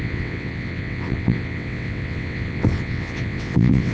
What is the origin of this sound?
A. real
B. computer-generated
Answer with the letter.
B